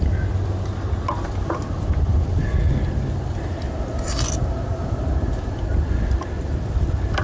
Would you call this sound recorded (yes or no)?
yes